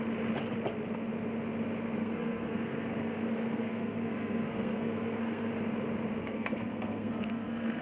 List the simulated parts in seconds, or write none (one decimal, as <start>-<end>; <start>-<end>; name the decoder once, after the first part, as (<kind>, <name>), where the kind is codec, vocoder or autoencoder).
2.0-5.5 (codec, SNAC); 6.2-7.8